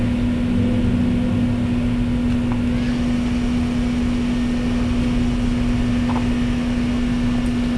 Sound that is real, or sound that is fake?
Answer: real